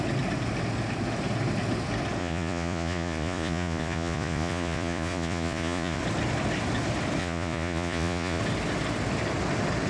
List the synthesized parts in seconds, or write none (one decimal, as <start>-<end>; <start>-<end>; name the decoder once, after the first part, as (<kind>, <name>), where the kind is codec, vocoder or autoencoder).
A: 2.2-6.0 (vocoder, Vocos); 7.2-8.4